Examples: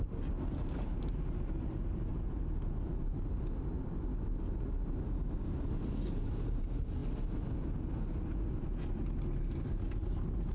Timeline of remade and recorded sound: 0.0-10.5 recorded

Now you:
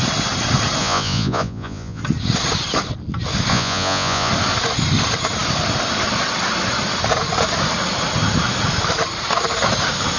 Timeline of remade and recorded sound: 0.0-0.8 recorded; 0.8-2.0 remade; 2.0-3.5 recorded; 3.5-4.3 remade; 4.3-10.2 recorded

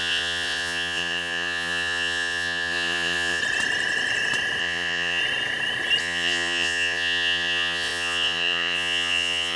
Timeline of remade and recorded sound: 0.0-3.4 remade; 3.4-4.6 recorded; 4.6-5.2 remade; 5.2-6.0 recorded; 6.0-9.6 remade

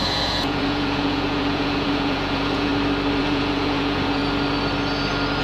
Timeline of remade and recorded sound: 0.0-2.7 remade; 2.7-3.2 recorded; 3.2-4.2 remade; 4.2-5.4 recorded

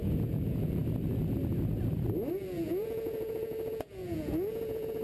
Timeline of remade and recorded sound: 0.0-0.8 remade; 0.8-2.3 recorded; 2.3-5.0 remade

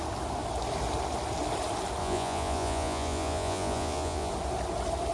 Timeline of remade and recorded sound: 0.0-2.0 recorded; 2.0-4.3 remade; 4.3-5.1 recorded

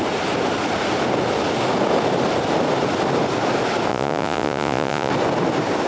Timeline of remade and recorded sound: 0.0-3.9 recorded; 3.9-5.1 remade; 5.1-5.9 recorded

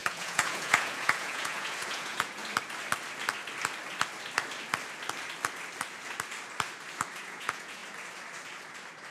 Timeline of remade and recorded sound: 0.0-2.4 remade; 2.4-7.2 recorded; 7.2-7.8 remade; 7.8-9.1 recorded